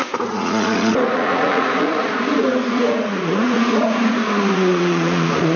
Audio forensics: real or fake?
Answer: fake